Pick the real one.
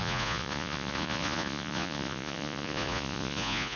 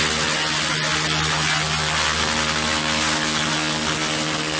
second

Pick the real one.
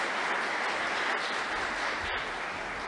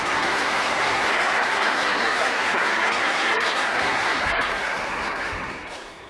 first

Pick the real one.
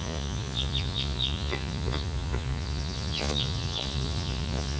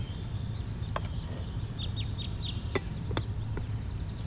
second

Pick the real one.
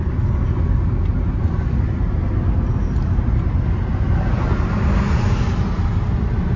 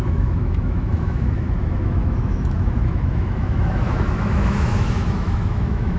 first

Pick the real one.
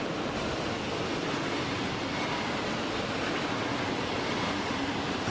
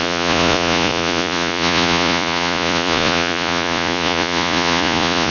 first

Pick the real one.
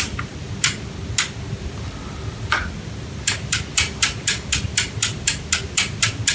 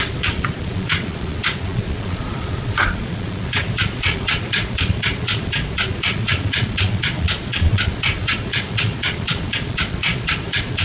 first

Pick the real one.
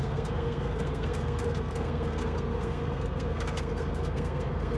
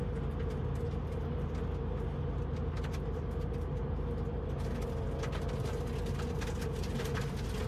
second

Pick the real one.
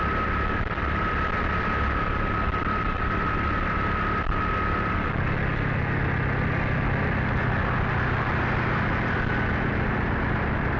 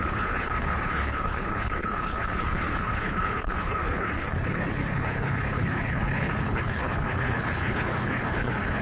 first